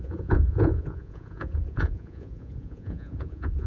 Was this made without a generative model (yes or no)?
no